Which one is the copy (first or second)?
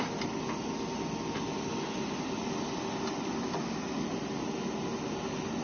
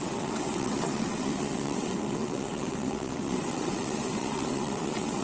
second